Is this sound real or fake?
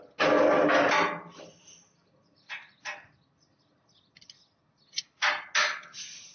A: real